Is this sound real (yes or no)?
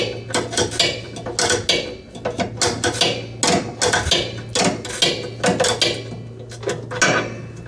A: yes